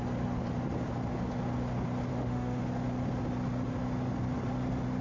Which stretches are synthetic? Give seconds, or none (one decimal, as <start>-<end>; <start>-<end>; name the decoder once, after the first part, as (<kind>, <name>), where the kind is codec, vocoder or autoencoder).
2.1-2.6 (autoencoder, DAC-VAE)